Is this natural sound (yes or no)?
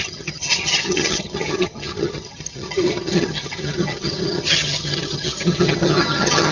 no